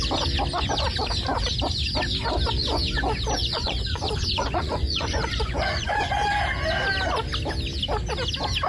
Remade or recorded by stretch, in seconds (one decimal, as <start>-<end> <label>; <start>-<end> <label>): 0.0-2.6 recorded; 2.6-6.4 remade; 6.4-8.7 recorded